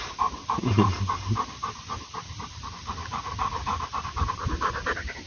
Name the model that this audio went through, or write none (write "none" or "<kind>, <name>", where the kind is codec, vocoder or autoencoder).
vocoder, BigVGAN v2